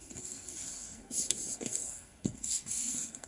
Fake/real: fake